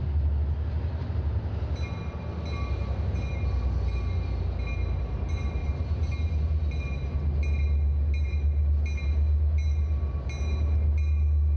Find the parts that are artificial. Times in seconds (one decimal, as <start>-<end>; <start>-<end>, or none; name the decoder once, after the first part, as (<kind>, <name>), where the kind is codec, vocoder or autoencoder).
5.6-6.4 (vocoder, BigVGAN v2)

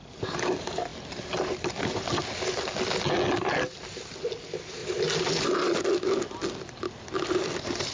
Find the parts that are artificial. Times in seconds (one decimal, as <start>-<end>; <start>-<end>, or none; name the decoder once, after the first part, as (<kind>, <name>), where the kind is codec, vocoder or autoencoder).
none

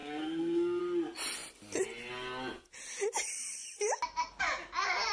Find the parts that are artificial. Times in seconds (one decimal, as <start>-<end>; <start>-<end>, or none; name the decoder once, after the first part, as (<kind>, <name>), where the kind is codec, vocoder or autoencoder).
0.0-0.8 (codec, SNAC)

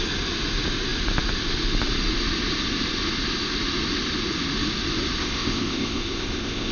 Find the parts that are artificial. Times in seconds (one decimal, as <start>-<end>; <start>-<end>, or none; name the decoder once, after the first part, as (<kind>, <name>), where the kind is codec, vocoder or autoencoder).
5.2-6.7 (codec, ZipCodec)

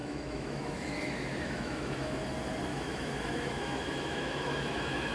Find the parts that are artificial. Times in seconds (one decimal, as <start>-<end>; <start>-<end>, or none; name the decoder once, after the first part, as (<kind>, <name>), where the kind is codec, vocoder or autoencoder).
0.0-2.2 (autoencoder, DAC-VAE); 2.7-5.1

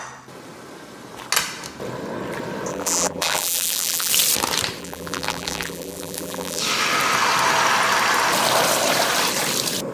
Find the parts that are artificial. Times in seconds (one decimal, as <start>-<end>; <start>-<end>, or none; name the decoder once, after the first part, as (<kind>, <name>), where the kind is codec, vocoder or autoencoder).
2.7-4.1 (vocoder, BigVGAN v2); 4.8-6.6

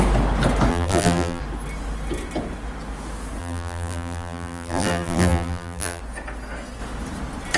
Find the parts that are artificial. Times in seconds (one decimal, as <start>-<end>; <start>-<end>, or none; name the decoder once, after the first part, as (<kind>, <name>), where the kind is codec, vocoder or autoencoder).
0.7-1.4 (vocoder, BigVGAN v2); 3.4-6.0